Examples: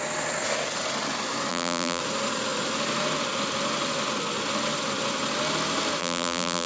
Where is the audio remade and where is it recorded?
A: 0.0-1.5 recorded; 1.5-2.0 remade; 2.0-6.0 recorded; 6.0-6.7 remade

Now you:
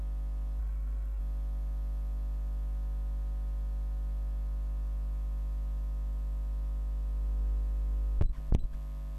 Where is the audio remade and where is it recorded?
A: 0.0-0.6 recorded; 0.6-1.2 remade; 1.2-9.2 recorded

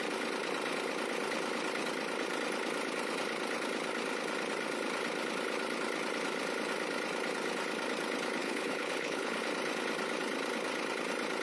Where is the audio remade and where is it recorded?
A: 0.0-8.4 recorded; 8.4-9.4 remade; 9.4-11.4 recorded

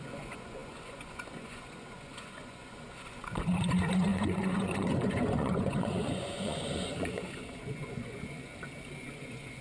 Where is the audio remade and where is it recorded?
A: 0.0-8.5 remade; 8.5-9.0 recorded; 9.0-9.6 remade